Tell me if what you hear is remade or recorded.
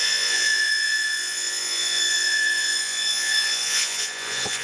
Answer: remade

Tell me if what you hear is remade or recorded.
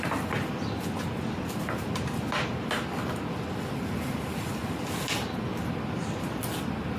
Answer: recorded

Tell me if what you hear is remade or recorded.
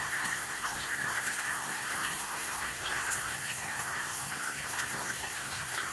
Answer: remade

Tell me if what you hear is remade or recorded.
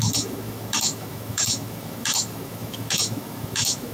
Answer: remade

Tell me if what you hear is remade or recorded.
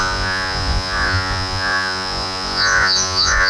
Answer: remade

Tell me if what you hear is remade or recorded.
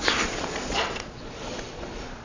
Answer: remade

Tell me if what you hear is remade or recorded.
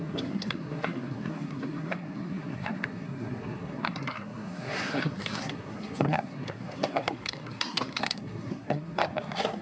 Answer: remade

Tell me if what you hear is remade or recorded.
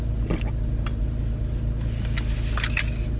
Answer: recorded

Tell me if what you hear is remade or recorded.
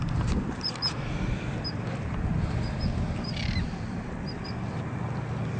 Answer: recorded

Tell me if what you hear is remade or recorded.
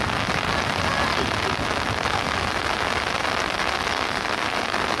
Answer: recorded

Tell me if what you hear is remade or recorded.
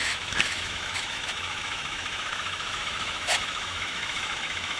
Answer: remade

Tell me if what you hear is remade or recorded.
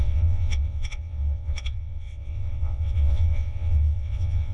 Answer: remade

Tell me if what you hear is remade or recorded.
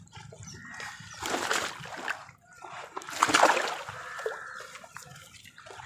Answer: recorded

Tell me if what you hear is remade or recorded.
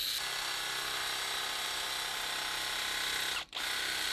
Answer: recorded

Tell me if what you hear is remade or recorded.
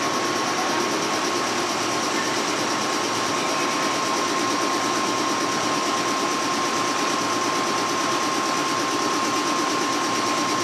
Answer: recorded